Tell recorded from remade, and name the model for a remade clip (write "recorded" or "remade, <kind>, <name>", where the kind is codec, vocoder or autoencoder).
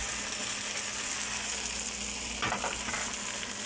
recorded